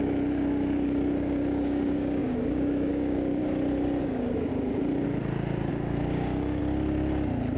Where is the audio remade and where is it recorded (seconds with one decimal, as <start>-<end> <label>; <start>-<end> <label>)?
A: 0.0-3.4 remade; 3.4-4.0 recorded; 4.0-4.5 remade; 4.5-5.7 recorded; 5.7-6.6 remade; 6.6-7.6 recorded